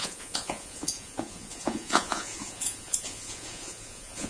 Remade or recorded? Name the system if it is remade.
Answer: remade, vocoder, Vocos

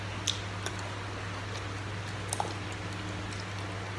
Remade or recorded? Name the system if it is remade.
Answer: recorded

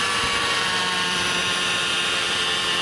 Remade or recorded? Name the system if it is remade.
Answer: remade, vocoder, BigVGAN v2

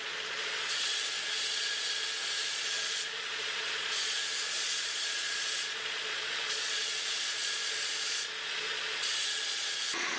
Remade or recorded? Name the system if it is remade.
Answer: remade, vocoder, Vocos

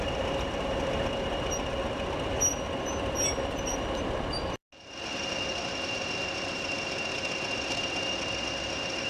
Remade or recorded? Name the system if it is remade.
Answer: recorded